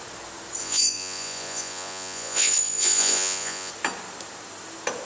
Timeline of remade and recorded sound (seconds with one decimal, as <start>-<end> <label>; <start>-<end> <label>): 0.0-0.6 recorded; 0.6-3.7 remade; 3.7-5.1 recorded